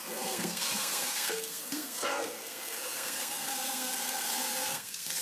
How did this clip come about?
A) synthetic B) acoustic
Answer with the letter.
A